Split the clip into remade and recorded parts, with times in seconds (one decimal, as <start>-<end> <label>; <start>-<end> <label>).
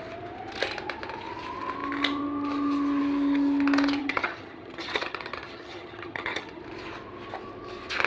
0.0-4.0 recorded; 4.0-6.6 remade; 6.6-8.1 recorded